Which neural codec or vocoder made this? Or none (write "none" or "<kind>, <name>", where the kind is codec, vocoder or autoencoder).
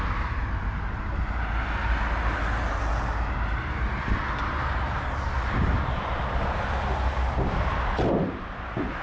none